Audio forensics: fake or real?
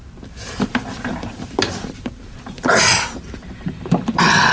fake